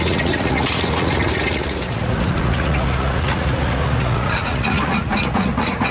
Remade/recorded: remade